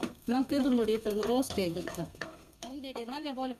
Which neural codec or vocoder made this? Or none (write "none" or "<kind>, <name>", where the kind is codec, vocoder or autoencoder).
codec, SNAC